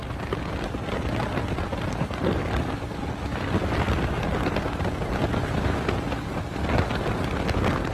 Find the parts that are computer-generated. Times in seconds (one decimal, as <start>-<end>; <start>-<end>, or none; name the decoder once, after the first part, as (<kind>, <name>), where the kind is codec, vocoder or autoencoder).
1.7-5.1 (vocoder, BigVGAN v2)